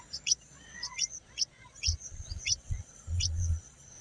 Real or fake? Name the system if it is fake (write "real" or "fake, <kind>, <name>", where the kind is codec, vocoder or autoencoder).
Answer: fake, vocoder, Vocos